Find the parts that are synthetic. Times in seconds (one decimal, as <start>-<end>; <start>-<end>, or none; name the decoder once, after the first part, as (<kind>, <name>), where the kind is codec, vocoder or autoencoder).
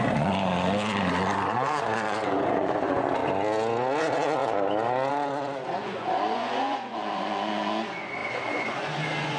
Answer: 0.0-3.2 (vocoder, Vocos); 4.0-4.4; 5.1-9.4